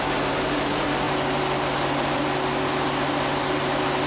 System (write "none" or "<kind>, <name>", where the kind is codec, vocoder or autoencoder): none